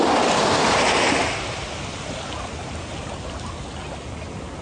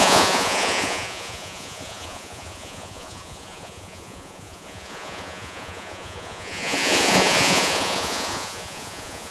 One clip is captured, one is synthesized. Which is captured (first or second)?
first